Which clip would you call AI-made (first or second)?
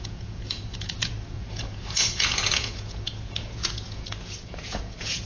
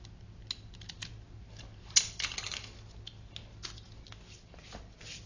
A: first